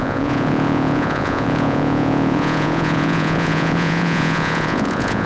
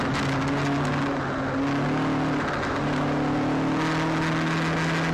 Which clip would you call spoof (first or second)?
first